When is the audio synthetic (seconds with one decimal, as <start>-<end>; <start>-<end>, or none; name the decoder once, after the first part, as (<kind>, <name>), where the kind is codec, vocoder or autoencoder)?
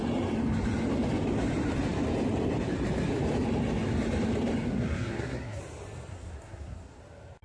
4.7-5.6 (codec, SNAC); 6.1-7.0